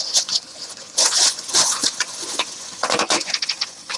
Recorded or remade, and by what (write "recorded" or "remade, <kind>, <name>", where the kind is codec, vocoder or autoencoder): remade, vocoder, Vocos